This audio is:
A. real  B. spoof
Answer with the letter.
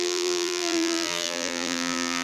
B